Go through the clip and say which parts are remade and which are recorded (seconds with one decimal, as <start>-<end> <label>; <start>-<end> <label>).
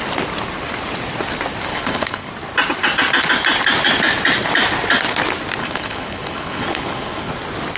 0.0-1.7 recorded; 1.7-2.3 remade; 2.3-5.6 recorded; 5.6-7.3 remade; 7.3-7.8 recorded